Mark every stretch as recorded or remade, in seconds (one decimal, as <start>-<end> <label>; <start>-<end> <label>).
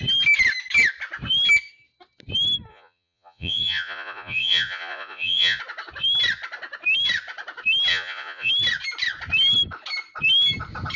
0.0-2.7 recorded; 2.7-5.6 remade; 5.6-7.9 recorded; 7.9-8.5 remade; 8.5-11.0 recorded